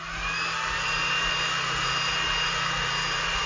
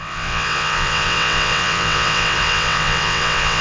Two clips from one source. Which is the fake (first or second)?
second